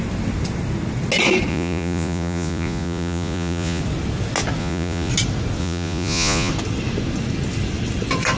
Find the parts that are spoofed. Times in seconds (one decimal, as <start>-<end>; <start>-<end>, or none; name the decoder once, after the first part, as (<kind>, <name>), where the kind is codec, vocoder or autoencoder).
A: 1.5-3.8 (vocoder, Vocos); 4.6-5.1; 5.6-6.5